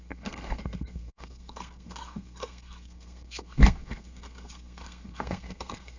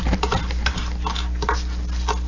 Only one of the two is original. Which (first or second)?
second